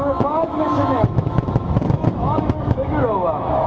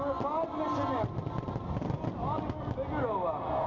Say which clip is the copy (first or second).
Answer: first